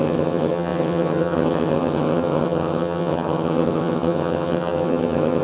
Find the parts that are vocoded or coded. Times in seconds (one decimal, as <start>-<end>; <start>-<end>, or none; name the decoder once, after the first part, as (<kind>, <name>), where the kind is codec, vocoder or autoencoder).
0.0-5.4 (vocoder, HiFi-GAN)